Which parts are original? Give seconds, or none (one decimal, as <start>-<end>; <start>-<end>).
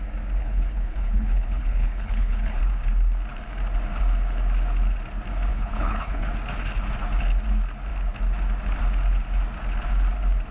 0.0-0.4; 2.6-5.5; 6.3-10.5